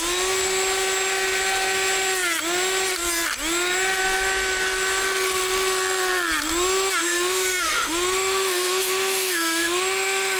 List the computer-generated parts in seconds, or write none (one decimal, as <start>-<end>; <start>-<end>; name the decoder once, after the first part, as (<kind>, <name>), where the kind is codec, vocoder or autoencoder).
7.0-10.4 (autoencoder, DAC-VAE)